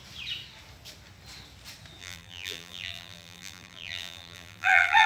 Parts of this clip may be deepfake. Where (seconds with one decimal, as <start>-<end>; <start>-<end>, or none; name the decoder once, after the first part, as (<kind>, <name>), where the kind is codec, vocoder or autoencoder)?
2.0-5.1 (vocoder, BigVGAN v2)